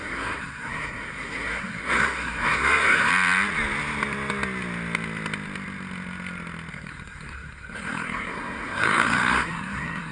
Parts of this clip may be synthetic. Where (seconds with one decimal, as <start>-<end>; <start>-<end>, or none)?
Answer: 0.0-3.1; 6.7-10.1